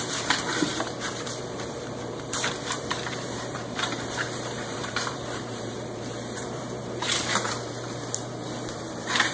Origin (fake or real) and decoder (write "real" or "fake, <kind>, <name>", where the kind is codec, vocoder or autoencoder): fake, vocoder, BigVGAN v2